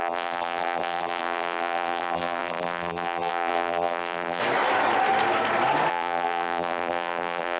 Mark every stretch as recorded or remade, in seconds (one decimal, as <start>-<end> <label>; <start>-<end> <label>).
0.0-4.4 remade; 4.4-5.9 recorded; 5.9-7.6 remade